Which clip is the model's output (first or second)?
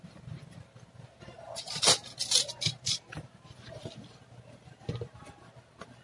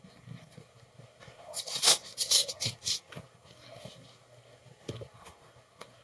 second